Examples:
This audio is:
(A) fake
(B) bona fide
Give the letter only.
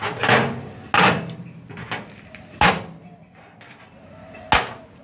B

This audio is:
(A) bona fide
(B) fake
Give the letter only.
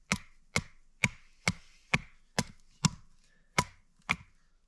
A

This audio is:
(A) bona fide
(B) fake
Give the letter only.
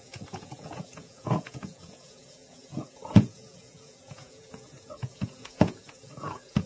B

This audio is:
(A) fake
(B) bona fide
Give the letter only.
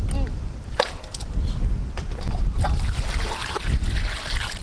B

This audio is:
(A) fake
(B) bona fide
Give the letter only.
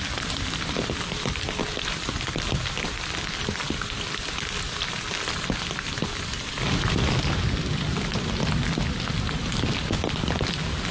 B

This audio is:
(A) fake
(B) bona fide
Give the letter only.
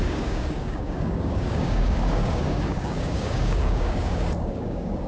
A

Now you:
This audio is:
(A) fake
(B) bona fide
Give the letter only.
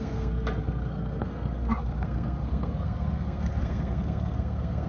A